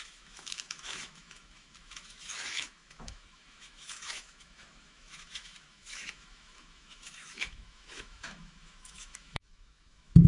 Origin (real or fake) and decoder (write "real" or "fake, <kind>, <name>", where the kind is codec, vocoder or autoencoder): fake, autoencoder, DAC-VAE